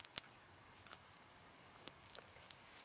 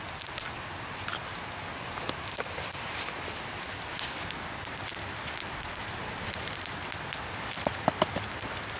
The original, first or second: second